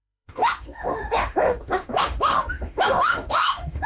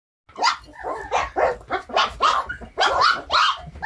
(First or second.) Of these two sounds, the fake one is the first